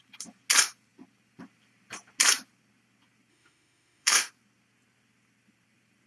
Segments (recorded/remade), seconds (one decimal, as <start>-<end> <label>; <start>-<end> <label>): 0.0-3.3 recorded; 3.3-4.3 remade; 4.3-6.1 recorded